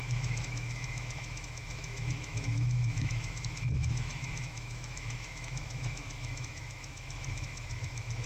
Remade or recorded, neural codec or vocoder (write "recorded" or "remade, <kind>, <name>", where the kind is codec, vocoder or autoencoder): remade, autoencoder, DAC-VAE